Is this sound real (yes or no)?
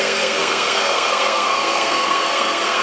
no